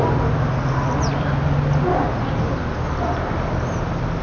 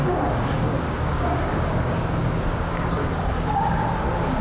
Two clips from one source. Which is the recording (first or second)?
first